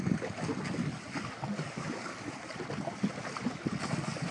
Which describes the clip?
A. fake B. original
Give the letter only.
B